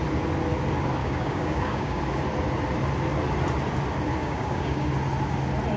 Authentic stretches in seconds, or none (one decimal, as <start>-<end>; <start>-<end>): 0.0-1.0; 2.0-4.2; 4.9-5.8